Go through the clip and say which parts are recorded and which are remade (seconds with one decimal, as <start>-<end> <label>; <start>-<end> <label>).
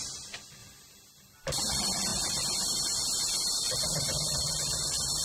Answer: 0.0-0.6 recorded; 0.6-1.6 remade; 1.6-2.1 recorded; 2.1-2.8 remade; 2.8-3.9 recorded; 3.9-4.4 remade; 4.4-5.2 recorded